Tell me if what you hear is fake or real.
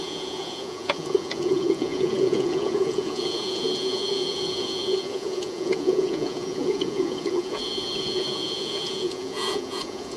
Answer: fake